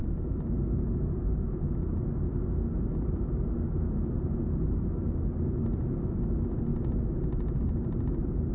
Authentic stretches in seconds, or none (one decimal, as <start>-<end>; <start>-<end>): 0.0-8.5